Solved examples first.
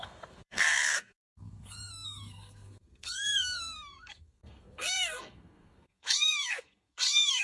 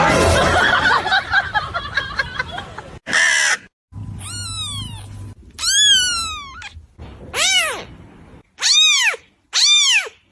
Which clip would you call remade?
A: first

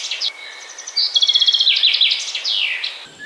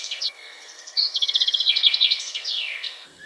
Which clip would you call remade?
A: second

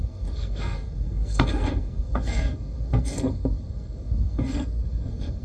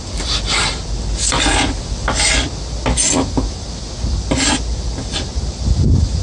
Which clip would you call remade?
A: first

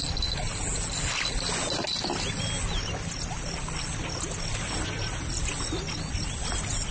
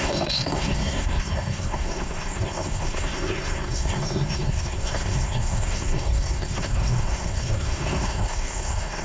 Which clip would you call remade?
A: second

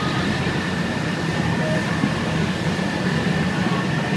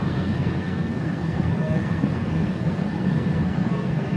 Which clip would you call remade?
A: second